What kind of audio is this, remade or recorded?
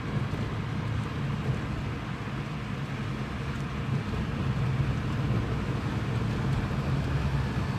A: recorded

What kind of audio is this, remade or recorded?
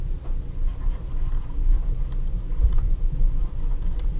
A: remade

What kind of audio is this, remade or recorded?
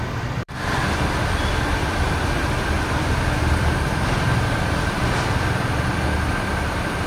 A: remade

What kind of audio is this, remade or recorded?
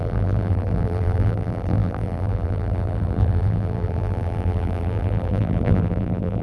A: remade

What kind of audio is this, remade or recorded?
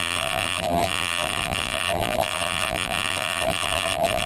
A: remade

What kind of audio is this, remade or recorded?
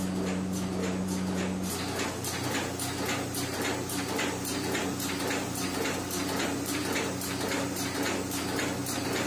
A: recorded